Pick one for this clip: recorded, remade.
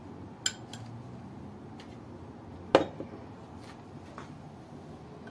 recorded